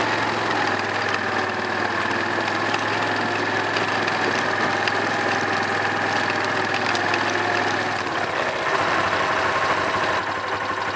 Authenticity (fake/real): real